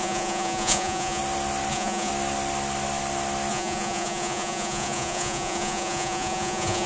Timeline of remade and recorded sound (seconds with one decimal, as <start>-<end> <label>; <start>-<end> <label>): 0.0-1.2 remade; 1.2-1.7 recorded; 1.7-2.1 remade; 2.1-3.5 recorded; 3.5-6.9 remade

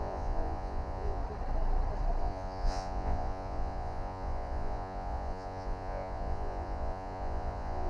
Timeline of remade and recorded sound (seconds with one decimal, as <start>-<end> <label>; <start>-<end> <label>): 0.0-1.2 remade; 1.2-2.2 recorded; 2.2-7.9 remade

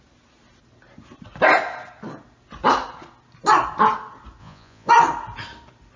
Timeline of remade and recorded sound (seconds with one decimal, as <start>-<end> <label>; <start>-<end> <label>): 0.0-4.4 recorded; 4.4-4.9 remade; 4.9-6.0 recorded

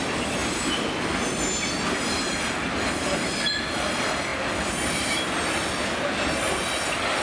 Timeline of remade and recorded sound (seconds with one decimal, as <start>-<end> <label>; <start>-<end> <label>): 0.0-7.2 recorded

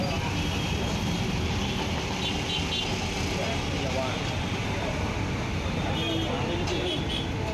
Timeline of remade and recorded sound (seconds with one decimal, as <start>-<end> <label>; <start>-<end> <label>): 0.0-7.5 recorded

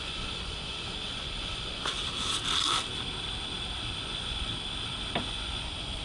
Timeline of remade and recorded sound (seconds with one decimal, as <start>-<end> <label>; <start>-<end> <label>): 0.0-1.9 remade; 1.9-4.0 recorded; 4.0-4.5 remade; 4.5-5.2 recorded; 5.2-6.0 remade